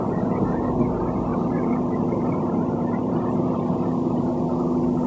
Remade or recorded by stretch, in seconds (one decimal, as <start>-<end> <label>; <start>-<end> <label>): 0.0-1.3 recorded; 1.3-4.4 remade; 4.4-5.1 recorded